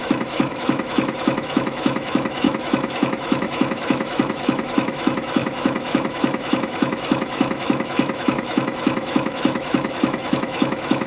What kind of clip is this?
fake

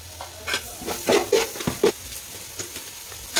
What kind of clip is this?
real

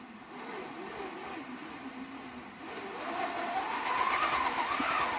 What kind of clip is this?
real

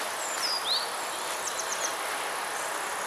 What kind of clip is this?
real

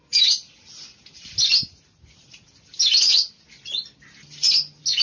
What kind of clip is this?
real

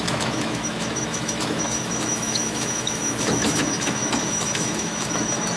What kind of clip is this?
fake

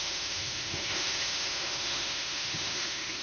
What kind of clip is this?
fake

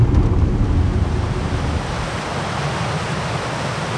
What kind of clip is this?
real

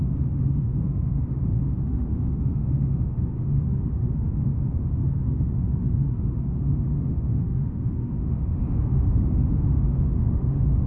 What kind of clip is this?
fake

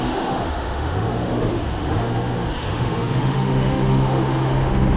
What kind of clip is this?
fake